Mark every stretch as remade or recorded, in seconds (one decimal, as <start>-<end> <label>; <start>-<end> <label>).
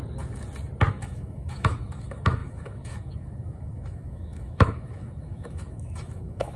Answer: 0.0-0.9 recorded; 0.9-6.6 remade